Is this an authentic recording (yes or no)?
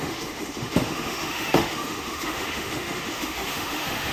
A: no